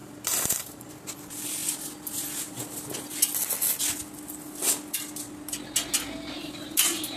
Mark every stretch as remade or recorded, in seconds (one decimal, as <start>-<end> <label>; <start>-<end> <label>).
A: 0.0-0.9 remade; 0.9-7.2 recorded